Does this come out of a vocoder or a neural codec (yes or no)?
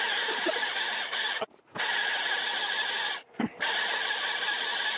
no